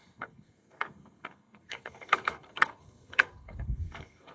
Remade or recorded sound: remade